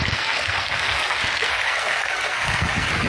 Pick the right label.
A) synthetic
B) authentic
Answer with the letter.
A